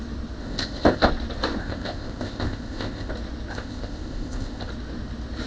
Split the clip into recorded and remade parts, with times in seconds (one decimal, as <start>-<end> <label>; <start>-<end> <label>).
0.0-0.4 recorded; 0.4-1.1 remade; 1.1-1.6 recorded; 1.6-3.1 remade; 3.1-3.5 recorded; 3.5-4.7 remade; 4.7-5.5 recorded